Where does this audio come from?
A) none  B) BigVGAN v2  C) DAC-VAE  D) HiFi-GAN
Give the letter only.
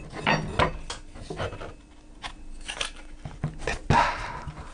A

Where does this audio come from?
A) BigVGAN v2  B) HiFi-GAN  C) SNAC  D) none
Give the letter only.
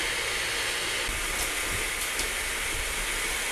D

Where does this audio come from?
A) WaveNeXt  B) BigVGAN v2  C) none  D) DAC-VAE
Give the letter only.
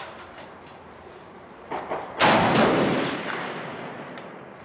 B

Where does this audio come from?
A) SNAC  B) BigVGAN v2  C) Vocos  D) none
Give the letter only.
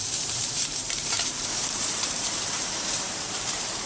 B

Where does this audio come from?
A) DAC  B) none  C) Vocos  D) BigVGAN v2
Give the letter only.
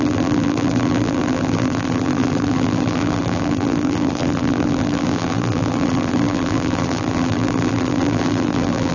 D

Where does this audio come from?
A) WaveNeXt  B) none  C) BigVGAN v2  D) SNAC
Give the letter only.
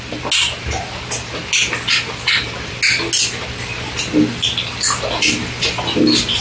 B